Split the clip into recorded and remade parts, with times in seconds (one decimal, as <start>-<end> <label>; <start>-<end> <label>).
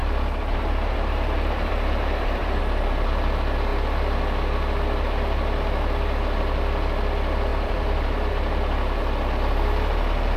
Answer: 0.0-2.6 remade; 2.6-7.5 recorded; 7.5-8.3 remade; 8.3-10.4 recorded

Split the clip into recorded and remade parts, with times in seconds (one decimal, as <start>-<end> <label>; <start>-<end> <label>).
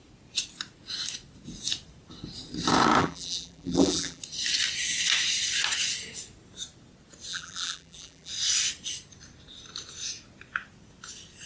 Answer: 0.0-3.0 recorded; 3.0-4.2 remade; 4.2-7.3 recorded; 7.3-8.3 remade; 8.3-11.5 recorded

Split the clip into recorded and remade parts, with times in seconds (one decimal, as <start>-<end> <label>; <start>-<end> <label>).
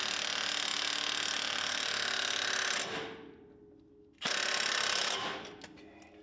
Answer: 0.0-6.2 recorded